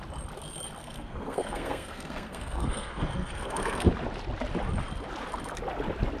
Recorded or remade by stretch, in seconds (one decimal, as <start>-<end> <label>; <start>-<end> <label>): 0.0-0.8 recorded; 0.8-3.9 remade; 3.9-6.2 recorded